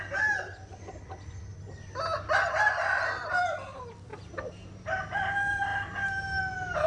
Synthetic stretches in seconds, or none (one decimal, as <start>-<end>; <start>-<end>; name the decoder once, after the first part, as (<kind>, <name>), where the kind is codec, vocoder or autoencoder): 4.1-5.0 (vocoder, BigVGAN v2)